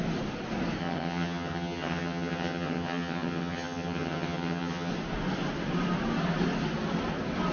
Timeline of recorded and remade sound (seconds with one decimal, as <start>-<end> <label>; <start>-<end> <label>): 0.0-0.8 recorded; 0.8-4.9 remade; 4.9-7.5 recorded